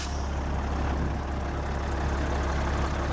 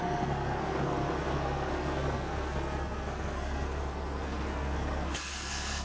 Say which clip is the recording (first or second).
first